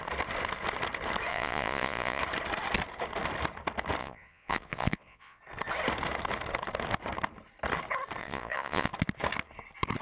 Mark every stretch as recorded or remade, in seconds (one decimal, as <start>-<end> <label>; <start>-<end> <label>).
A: 0.0-1.3 recorded; 1.3-2.2 remade; 2.2-4.0 recorded; 4.0-5.4 remade; 5.4-8.2 recorded; 8.2-8.9 remade; 8.9-10.0 recorded